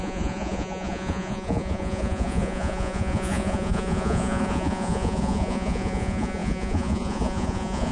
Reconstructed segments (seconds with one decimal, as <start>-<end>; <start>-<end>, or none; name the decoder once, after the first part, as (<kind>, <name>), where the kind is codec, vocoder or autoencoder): 0.0-7.9 (vocoder, Vocos)